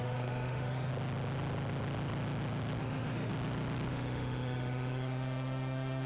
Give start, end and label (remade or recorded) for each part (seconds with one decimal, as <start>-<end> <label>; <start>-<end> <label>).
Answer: 0.0-0.9 remade; 0.9-2.8 recorded; 2.8-3.3 remade; 3.3-3.9 recorded; 3.9-6.1 remade